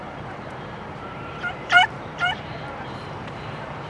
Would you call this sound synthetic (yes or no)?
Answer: yes